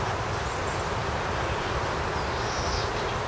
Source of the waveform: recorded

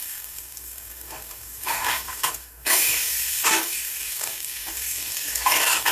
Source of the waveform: remade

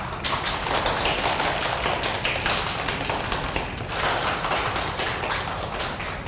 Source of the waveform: recorded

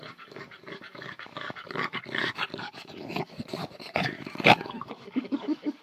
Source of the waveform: remade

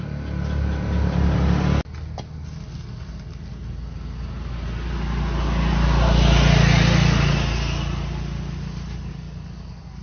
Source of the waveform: recorded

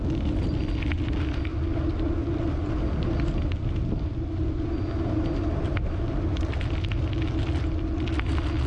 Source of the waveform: recorded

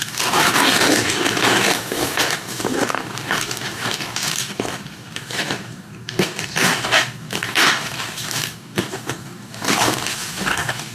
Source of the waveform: remade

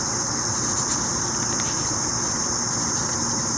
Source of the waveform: recorded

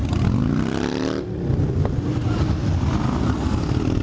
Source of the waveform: recorded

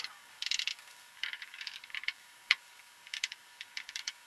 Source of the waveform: remade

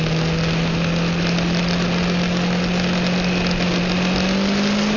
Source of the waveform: recorded